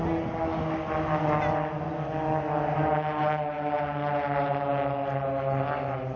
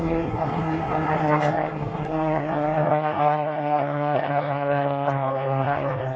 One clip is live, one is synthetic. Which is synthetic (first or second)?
second